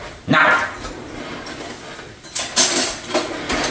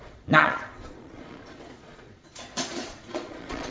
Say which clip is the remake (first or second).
second